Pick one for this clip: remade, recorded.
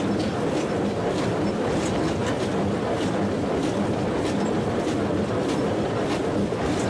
recorded